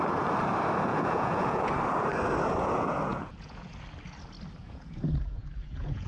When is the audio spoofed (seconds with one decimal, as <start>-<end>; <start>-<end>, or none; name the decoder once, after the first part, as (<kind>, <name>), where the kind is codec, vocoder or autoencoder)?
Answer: 0.9-1.7 (vocoder, Vocos); 3.1-3.7; 4.6-6.1